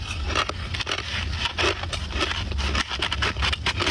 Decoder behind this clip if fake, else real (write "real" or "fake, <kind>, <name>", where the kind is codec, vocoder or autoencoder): real